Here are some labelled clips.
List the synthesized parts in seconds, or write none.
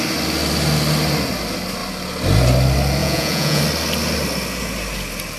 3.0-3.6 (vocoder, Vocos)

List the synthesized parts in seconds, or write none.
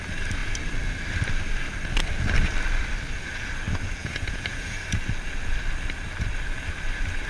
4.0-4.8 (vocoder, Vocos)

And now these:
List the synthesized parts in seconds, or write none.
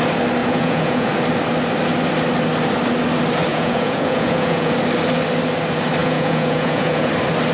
0.4-1.1 (vocoder, Vocos); 3.5-4.7; 6.0-7.1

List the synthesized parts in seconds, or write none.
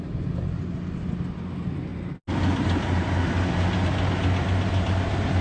none